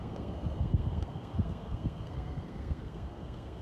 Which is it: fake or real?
fake